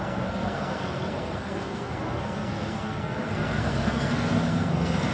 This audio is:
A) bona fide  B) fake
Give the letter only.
B